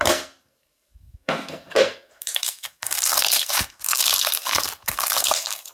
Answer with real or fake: fake